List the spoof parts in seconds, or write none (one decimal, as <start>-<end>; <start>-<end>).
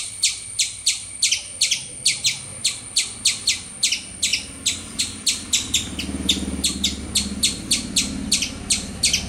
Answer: none